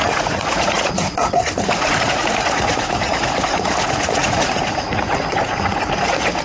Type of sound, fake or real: fake